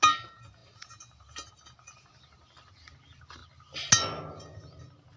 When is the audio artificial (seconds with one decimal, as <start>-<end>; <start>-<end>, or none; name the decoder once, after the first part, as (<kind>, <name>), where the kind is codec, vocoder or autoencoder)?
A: none